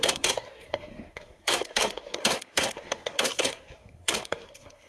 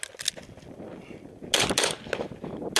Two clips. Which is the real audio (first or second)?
second